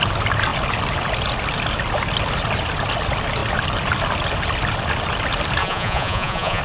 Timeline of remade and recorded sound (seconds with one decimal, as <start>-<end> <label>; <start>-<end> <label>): 0.0-5.6 recorded; 5.6-6.6 remade